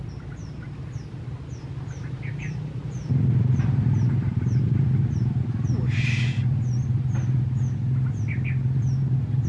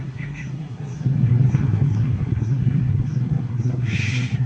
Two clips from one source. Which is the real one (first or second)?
first